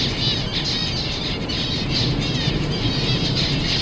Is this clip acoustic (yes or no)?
yes